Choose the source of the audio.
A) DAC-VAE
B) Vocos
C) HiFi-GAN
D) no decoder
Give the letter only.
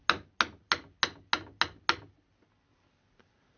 D